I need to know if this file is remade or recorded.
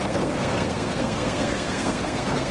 remade